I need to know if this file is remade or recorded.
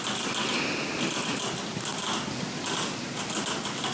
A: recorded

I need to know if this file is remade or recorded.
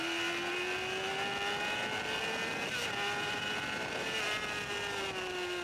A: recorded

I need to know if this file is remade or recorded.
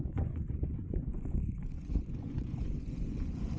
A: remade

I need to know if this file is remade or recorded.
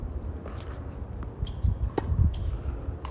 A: recorded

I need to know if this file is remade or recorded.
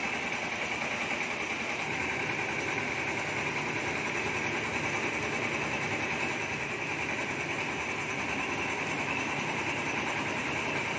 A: recorded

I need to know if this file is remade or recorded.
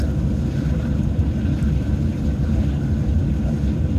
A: recorded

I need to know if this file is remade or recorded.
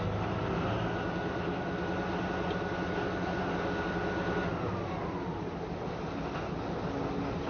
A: recorded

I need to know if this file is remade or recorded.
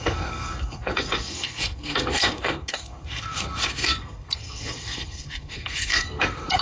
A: remade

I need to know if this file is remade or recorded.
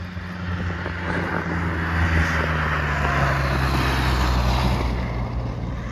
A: recorded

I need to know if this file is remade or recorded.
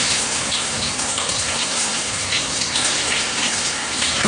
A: remade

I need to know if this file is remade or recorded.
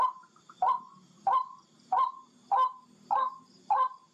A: recorded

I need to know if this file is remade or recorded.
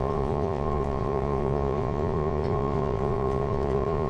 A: remade